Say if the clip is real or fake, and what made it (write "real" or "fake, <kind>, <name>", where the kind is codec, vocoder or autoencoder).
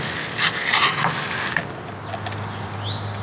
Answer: real